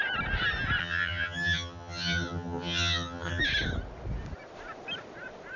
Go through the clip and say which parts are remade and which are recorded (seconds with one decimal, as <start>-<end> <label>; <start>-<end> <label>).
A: 0.0-0.8 recorded; 0.8-3.4 remade; 3.4-5.6 recorded